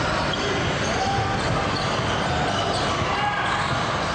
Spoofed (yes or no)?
no